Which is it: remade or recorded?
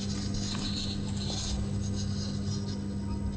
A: recorded